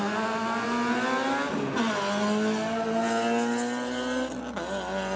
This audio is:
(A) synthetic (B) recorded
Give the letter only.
B